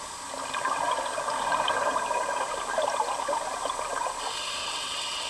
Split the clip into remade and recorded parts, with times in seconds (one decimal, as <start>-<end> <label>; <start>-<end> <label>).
0.0-4.6 recorded; 4.6-5.3 remade